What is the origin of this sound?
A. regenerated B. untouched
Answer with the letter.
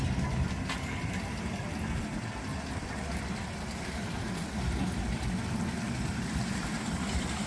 B